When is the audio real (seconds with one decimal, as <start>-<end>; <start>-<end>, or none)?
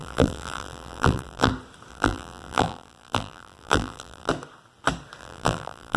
1.5-1.9; 4.3-5.2